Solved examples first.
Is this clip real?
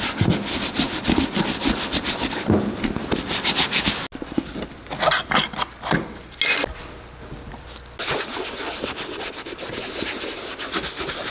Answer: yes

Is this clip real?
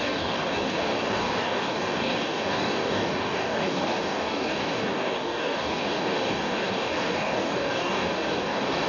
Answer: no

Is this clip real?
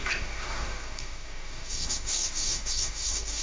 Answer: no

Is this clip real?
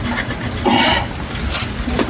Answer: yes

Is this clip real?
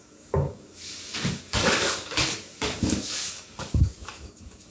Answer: no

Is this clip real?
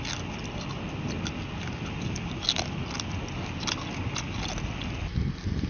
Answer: yes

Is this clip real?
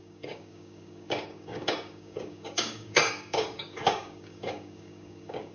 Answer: no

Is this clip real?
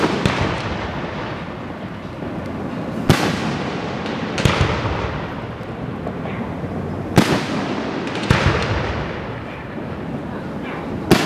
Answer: yes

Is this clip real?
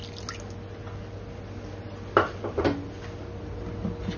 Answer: yes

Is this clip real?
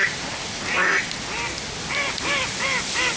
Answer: yes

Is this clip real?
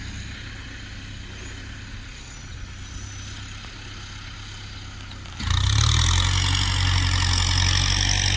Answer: yes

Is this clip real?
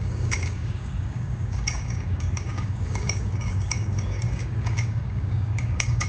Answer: no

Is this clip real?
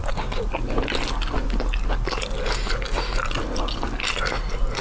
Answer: yes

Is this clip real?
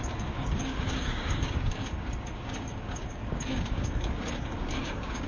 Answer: no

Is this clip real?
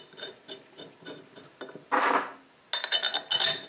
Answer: yes